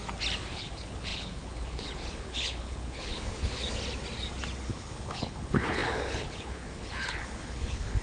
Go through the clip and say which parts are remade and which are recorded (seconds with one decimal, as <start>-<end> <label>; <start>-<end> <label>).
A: 0.0-0.5 recorded; 0.5-3.6 remade; 3.6-4.6 recorded; 4.6-8.0 remade